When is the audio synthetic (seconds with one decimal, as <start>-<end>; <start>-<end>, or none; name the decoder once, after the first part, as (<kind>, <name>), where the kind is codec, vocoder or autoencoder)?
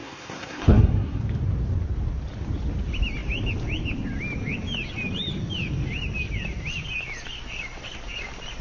0.0-1.2 (codec, SNAC)